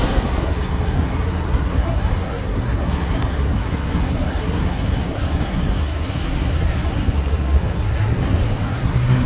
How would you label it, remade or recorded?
remade